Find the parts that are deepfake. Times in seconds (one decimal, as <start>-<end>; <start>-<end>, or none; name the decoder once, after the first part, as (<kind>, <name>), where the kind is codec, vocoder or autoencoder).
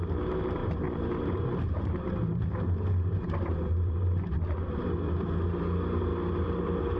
0.6-4.8 (vocoder, BigVGAN v2)